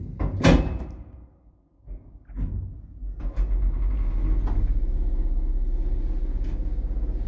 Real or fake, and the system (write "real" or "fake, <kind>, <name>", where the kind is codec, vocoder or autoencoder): real